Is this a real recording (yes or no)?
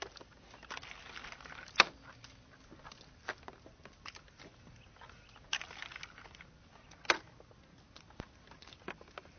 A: yes